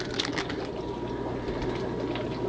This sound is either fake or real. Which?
real